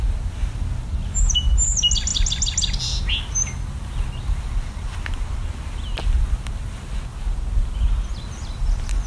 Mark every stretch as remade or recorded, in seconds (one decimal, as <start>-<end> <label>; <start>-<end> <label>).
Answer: 0.0-9.1 recorded